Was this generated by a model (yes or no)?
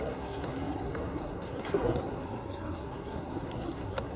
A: yes